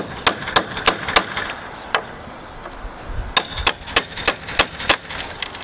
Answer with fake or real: real